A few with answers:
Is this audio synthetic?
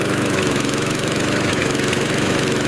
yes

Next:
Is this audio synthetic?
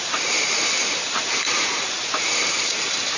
yes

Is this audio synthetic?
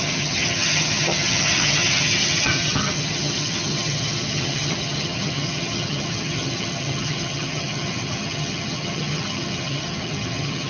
yes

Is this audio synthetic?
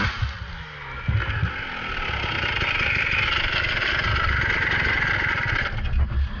no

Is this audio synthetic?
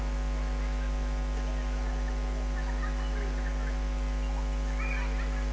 no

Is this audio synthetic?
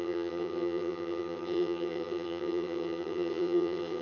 yes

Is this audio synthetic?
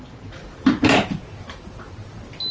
no